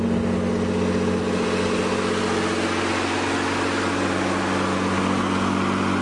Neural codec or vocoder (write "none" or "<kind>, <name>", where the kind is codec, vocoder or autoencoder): none